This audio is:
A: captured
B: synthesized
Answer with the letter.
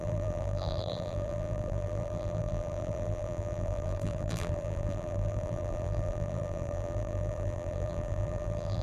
B